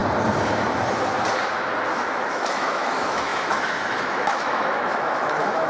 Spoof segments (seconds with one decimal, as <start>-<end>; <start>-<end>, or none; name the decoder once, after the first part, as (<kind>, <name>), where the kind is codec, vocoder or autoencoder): 1.9-5.7 (autoencoder, DAC-VAE)